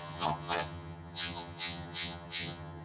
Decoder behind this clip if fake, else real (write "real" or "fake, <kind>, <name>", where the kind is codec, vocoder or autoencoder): fake, vocoder, HiFi-GAN